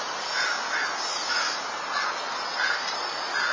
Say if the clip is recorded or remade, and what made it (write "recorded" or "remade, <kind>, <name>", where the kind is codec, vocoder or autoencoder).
recorded